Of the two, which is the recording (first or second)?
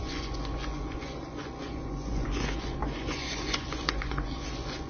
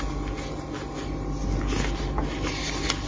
second